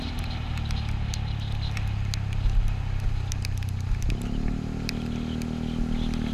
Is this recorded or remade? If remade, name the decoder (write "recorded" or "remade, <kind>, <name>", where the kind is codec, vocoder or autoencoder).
recorded